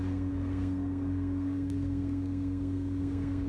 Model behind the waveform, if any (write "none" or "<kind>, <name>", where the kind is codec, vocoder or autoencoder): codec, SNAC